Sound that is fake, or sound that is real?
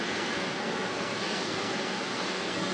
fake